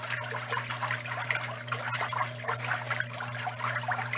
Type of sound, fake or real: real